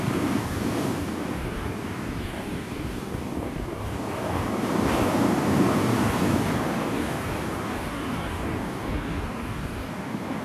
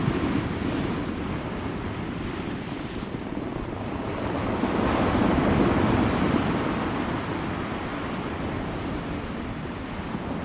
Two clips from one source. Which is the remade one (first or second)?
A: first